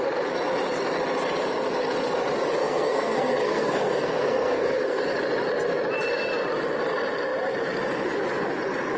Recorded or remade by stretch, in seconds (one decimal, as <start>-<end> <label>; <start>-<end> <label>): 0.0-2.6 recorded; 2.6-5.0 remade; 5.0-9.0 recorded